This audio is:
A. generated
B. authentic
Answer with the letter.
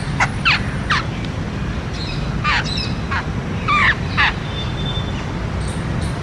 B